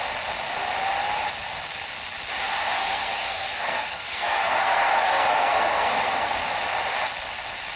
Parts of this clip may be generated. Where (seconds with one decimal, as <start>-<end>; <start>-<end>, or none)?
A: 2.8-6.3